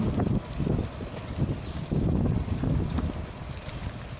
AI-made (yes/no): no